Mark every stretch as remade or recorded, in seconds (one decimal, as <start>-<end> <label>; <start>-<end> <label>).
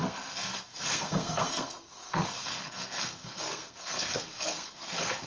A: 0.0-5.3 remade